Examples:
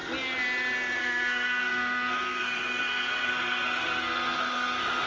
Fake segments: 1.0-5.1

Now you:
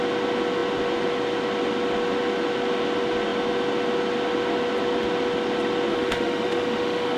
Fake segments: 5.9-7.2

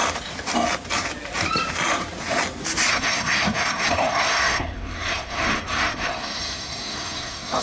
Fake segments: 2.9-7.6

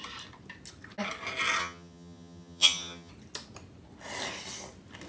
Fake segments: 1.6-3.1

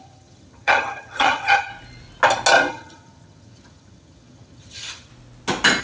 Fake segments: 0.0-1.7; 2.7-5.1

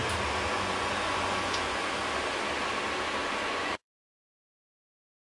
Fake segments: 0.5-2.0; 3.3-5.3

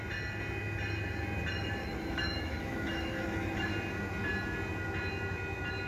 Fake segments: 1.8-3.7

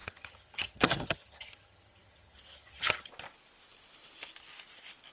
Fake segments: 0.0-3.1